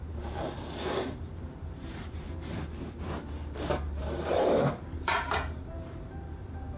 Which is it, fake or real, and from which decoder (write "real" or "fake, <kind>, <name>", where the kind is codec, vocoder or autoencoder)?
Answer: fake, vocoder, BigVGAN v2